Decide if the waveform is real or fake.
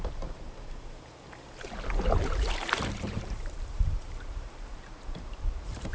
fake